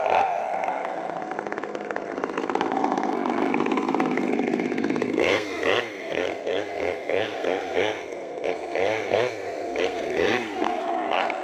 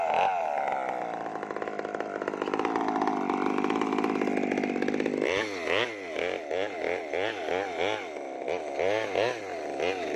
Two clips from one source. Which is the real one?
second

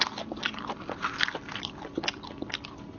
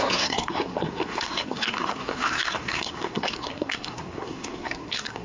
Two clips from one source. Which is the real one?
first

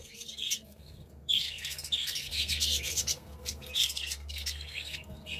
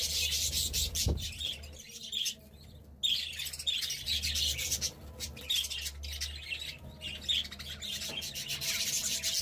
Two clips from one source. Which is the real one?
second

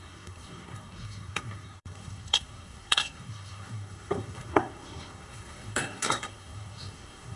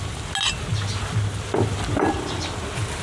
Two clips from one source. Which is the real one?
second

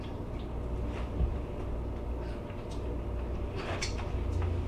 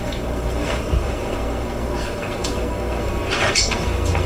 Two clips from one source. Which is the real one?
first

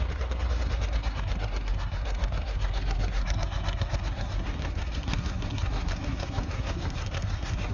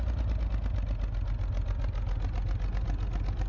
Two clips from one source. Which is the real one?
second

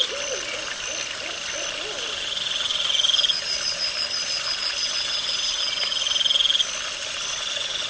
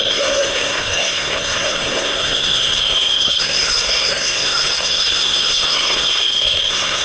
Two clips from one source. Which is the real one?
first